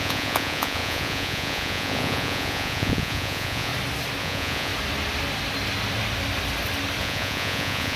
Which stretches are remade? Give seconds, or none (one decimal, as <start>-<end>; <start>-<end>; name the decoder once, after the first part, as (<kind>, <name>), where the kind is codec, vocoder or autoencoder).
0.0-3.7 (vocoder, Vocos); 4.2-4.7; 7.0-8.0